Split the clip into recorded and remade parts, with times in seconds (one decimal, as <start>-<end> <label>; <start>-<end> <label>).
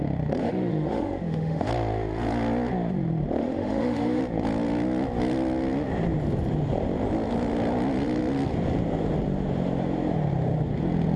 0.0-0.4 recorded; 0.4-1.7 remade; 1.7-3.4 recorded; 3.4-4.2 remade; 4.2-11.2 recorded